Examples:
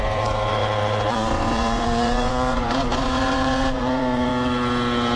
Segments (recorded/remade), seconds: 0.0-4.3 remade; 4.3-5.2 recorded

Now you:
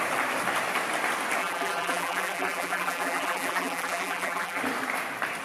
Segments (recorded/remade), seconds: 0.0-1.4 recorded; 1.4-4.6 remade; 4.6-5.4 recorded

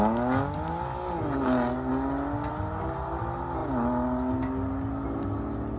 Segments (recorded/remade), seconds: 0.0-5.8 recorded

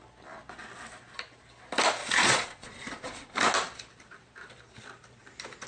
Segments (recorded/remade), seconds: 0.0-2.0 recorded; 2.0-3.4 remade; 3.4-5.7 recorded